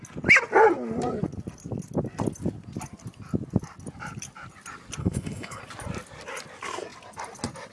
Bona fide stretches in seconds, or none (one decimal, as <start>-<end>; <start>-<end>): 0.0-5.0; 5.6-7.7